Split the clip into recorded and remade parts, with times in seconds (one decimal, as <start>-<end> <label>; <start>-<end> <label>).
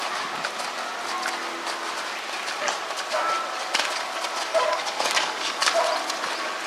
0.0-4.5 recorded; 4.5-5.7 remade; 5.7-6.7 recorded